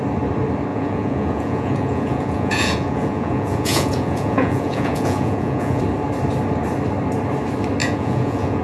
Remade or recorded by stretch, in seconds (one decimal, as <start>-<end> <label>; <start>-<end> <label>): 0.0-0.7 recorded; 0.7-5.8 remade; 5.8-7.8 recorded; 7.8-8.6 remade